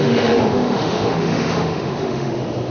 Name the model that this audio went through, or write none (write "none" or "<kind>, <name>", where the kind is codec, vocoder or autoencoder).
autoencoder, DAC-VAE